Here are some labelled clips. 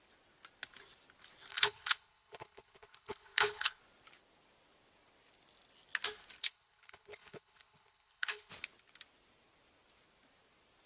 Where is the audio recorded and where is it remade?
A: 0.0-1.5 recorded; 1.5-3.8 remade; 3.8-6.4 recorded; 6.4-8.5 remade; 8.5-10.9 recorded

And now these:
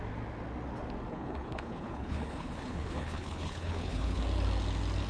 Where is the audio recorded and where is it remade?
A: 0.0-1.1 recorded; 1.1-4.2 remade; 4.2-5.1 recorded

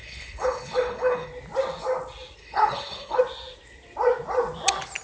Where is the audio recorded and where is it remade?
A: 0.0-1.3 remade; 1.3-2.4 recorded; 2.4-3.2 remade; 3.2-5.0 recorded

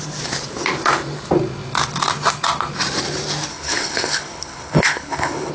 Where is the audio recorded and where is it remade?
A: 0.0-3.5 recorded; 3.5-5.5 remade

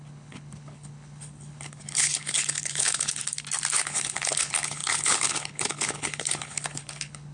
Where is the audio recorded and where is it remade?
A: 0.0-3.2 remade; 3.2-3.7 recorded; 3.7-7.3 remade